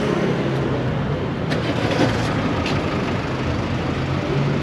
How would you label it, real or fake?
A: real